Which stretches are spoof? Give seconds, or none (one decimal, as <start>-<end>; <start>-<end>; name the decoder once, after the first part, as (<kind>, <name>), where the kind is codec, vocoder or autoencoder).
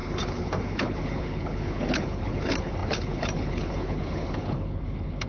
0.0-5.3 (codec, HILCodec)